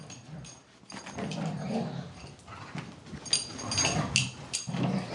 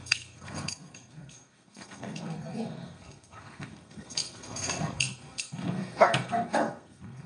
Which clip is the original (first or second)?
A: first